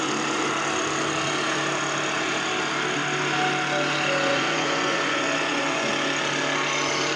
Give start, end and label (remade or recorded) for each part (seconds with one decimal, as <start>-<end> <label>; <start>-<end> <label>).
0.0-4.3 recorded; 4.3-5.9 remade; 5.9-7.2 recorded